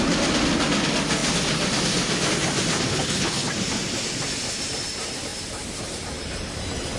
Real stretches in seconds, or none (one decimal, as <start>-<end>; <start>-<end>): 0.0-2.9; 3.5-7.0